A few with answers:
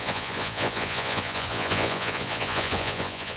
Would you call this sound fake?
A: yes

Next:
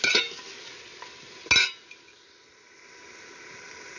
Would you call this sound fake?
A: no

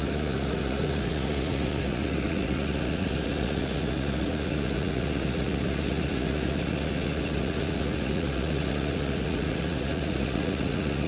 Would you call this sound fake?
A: yes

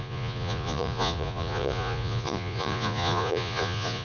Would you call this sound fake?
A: yes